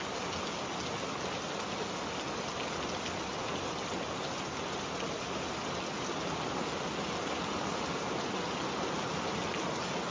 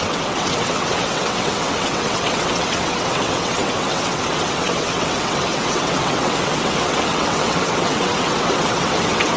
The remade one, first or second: second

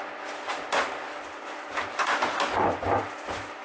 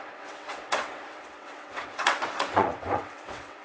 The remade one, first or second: second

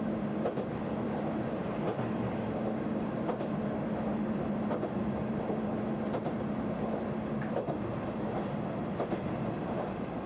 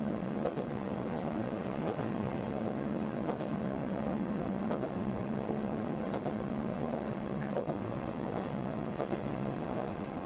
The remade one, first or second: second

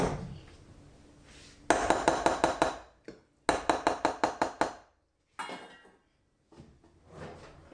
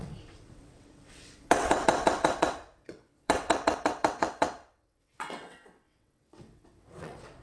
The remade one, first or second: second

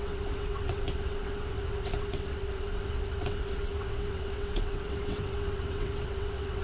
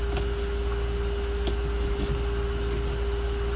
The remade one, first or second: first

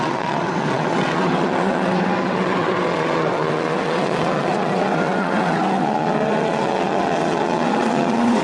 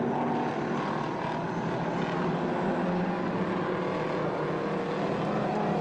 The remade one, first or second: first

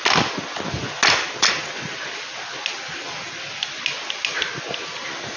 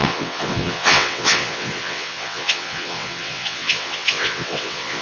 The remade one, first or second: second